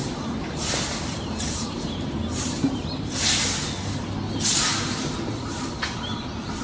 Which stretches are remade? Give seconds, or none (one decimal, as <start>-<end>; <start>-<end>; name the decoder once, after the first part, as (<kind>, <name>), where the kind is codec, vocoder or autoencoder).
0.0-3.5 (vocoder, BigVGAN v2); 4.7-5.4